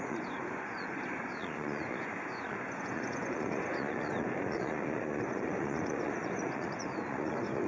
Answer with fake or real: fake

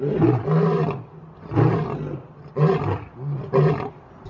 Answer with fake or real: real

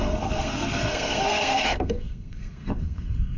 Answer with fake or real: fake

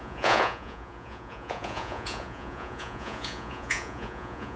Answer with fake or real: fake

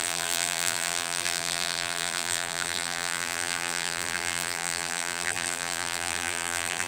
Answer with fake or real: fake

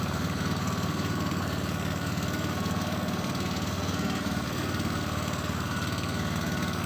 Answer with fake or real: fake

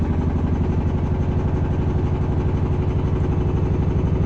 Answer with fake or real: real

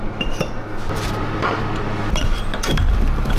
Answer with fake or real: fake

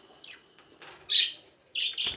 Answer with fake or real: real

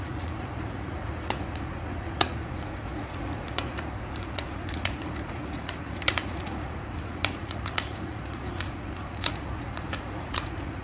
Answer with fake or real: fake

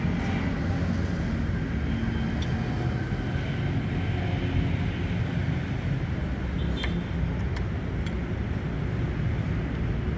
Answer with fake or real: real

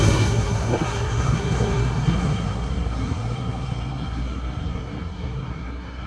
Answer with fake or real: fake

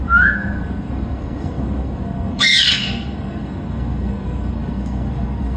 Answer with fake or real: fake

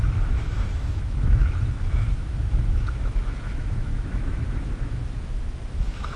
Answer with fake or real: fake